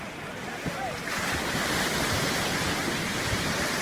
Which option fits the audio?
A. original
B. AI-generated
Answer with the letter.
A